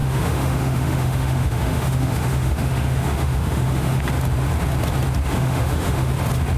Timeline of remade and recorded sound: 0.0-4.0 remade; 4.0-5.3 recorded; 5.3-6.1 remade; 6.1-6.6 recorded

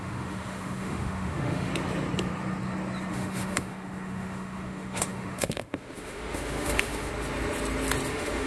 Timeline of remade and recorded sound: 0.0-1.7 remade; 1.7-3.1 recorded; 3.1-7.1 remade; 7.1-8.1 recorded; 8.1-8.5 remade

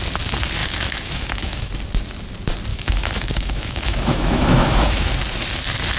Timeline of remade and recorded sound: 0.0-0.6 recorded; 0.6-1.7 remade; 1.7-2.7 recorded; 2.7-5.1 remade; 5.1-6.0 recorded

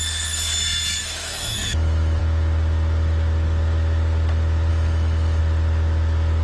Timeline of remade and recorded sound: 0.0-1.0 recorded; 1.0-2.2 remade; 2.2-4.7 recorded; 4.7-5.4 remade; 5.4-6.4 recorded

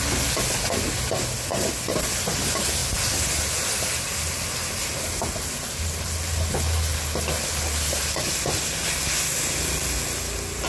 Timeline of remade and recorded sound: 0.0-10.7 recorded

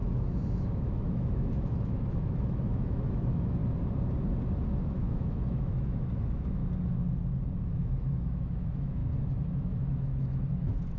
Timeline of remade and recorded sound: 0.0-3.6 remade; 3.6-4.8 recorded; 4.8-6.6 remade; 6.6-7.7 recorded; 7.7-9.0 remade; 9.0-9.6 recorded; 9.6-11.0 remade

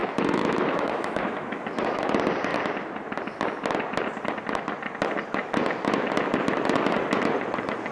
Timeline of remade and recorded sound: 0.0-2.1 remade; 2.1-7.9 recorded